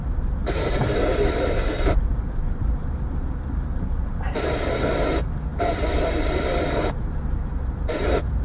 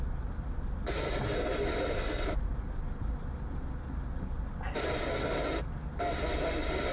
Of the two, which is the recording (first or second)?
second